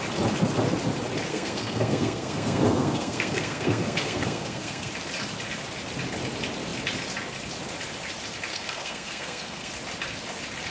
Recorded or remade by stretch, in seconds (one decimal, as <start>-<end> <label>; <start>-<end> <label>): 0.0-1.3 recorded; 1.3-4.9 remade; 4.9-8.5 recorded; 8.5-9.7 remade; 9.7-10.7 recorded